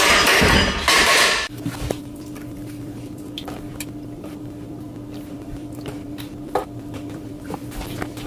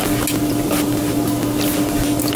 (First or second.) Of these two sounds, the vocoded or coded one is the first